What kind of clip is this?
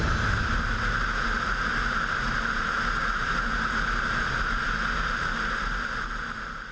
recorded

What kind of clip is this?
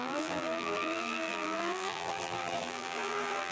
remade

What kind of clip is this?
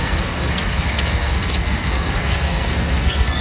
remade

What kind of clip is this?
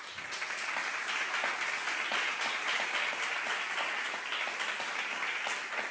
recorded